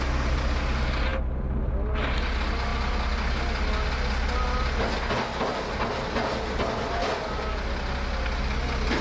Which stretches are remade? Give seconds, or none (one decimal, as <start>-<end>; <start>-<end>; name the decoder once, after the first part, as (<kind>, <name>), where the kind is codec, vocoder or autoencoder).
none